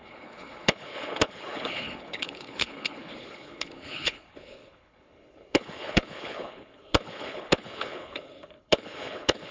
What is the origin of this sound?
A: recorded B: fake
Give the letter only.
B